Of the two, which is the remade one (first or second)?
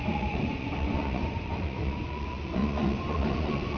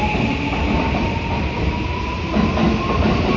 first